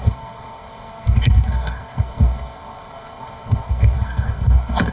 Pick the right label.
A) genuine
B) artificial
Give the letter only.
B